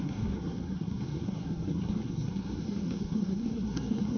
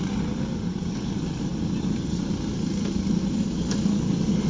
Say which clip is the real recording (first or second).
second